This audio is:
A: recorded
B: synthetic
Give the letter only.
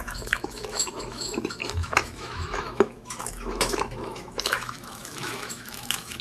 B